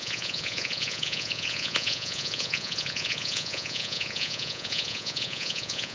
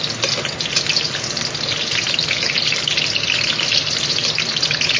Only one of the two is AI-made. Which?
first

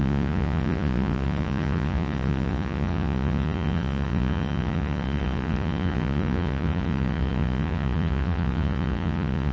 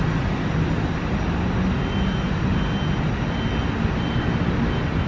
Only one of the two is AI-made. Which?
first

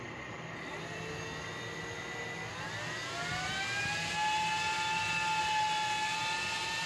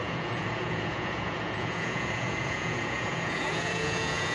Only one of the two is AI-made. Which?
second